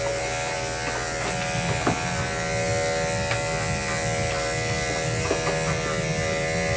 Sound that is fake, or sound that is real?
real